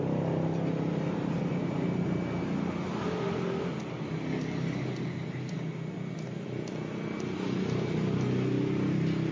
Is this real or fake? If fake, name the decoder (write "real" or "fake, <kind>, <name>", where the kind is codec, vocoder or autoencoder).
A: real